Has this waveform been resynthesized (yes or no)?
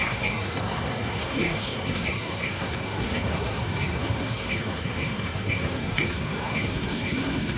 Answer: yes